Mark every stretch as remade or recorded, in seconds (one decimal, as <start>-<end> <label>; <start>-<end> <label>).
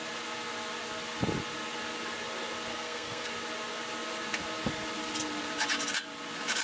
0.0-2.7 recorded; 2.7-3.3 remade; 3.3-6.6 recorded